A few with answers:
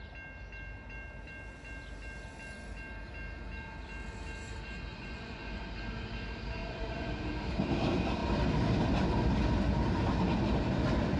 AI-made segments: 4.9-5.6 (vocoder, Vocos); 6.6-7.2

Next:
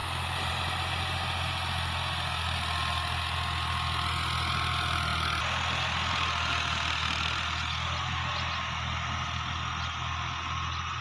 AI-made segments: none

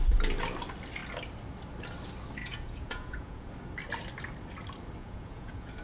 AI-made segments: 2.4-3.5 (vocoder, Vocos); 5.0-5.8

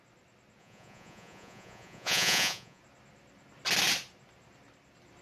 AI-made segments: 0.6-2.8 (vocoder, Vocos)

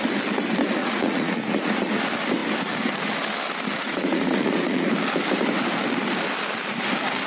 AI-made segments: 0.8-2.0 (vocoder, Vocos); 3.8-4.9

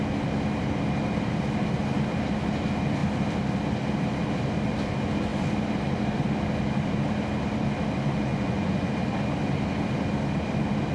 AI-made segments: 8.3-8.9 (vocoder, Vocos)

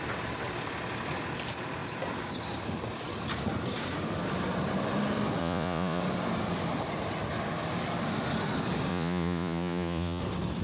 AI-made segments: 5.4-6.0 (vocoder, Vocos); 8.9-10.2